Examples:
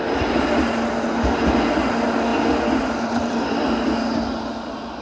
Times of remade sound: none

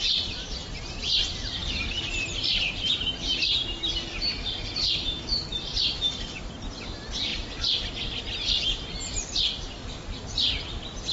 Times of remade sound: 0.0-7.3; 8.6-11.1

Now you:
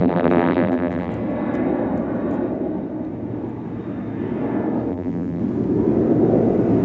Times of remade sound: 0.0-1.1; 4.9-5.4